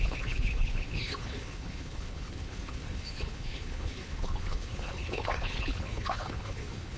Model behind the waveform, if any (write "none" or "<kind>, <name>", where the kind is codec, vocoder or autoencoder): codec, HILCodec